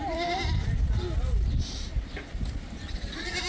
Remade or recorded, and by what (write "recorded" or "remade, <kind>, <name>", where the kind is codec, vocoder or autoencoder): recorded